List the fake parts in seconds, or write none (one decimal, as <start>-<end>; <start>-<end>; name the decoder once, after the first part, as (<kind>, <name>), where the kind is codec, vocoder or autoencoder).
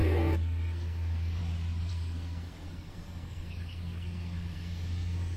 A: 0.0-1.4 (codec, SNAC); 1.9-5.4